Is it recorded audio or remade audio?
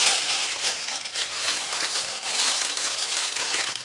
remade